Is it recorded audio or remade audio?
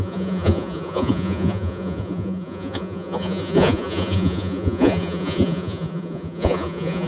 remade